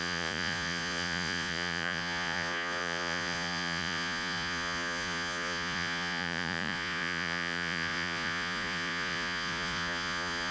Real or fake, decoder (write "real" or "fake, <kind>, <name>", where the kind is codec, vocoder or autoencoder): fake, vocoder, Vocos